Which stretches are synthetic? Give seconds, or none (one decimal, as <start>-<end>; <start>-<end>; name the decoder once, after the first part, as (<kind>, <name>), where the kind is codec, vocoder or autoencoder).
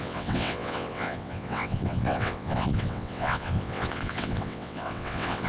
0.0-5.5 (vocoder, WaveNeXt)